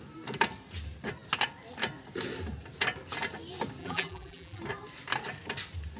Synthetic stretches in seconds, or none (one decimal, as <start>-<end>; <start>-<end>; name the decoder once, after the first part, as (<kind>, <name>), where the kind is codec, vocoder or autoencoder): 3.8-4.6 (vocoder, BigVGAN v2)